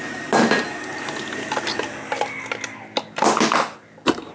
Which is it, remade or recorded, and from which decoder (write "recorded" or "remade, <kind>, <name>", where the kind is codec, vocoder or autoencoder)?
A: recorded